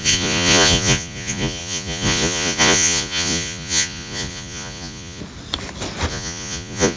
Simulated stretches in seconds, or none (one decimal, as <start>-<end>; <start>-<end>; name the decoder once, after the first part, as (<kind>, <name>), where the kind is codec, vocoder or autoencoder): 0.0-5.2 (vocoder, Vocos); 6.1-7.0